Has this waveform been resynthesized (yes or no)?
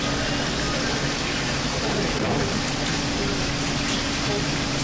no